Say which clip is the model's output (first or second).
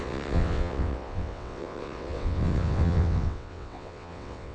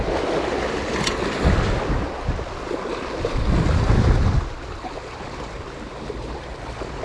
first